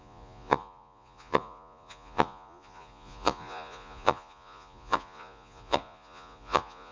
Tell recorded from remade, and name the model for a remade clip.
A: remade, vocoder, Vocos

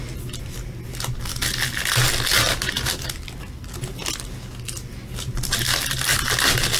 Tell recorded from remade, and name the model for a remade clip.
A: recorded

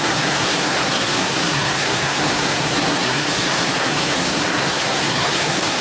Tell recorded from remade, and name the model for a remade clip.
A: remade, codec, SNAC